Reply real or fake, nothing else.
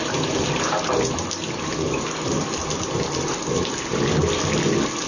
real